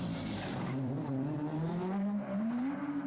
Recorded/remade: remade